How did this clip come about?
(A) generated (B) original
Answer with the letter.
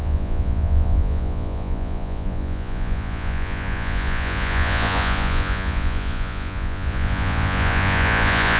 A